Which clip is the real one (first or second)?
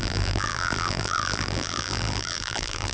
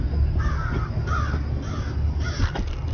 second